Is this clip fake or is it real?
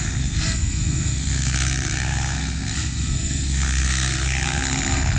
fake